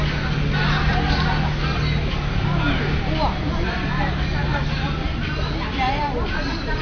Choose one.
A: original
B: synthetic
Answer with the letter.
A